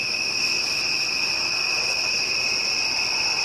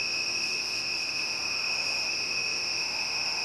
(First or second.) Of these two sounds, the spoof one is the second